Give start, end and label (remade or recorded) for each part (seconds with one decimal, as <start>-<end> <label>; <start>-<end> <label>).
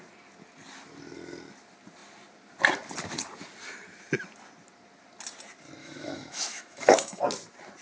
0.0-5.8 recorded; 5.8-7.2 remade; 7.2-7.8 recorded